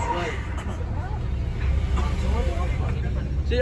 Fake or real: real